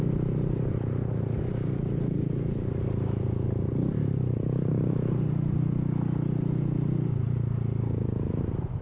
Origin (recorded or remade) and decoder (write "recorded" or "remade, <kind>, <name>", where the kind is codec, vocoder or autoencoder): recorded